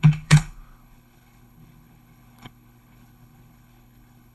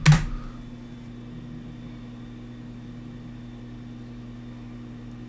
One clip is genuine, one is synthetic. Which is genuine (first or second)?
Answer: second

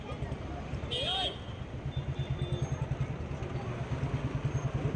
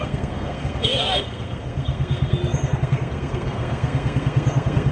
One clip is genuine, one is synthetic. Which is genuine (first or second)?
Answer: first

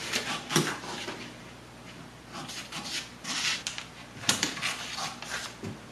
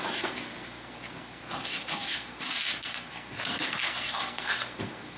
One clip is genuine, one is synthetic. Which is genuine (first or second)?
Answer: first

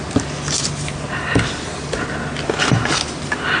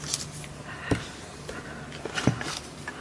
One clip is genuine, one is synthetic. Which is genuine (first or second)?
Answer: first